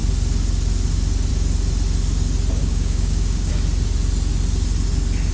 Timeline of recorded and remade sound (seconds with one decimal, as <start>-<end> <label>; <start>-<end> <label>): 0.0-2.6 recorded; 2.6-3.5 remade; 3.5-5.3 recorded